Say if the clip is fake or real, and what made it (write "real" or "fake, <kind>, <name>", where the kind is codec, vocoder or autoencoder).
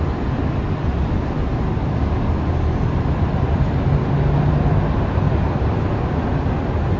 real